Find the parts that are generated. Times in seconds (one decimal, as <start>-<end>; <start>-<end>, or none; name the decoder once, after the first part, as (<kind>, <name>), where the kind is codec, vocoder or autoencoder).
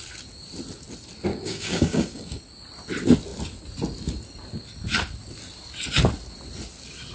1.3-2.4 (codec, DAC)